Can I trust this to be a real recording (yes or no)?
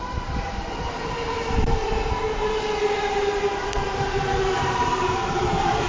no